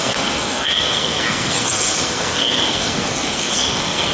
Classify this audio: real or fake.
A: fake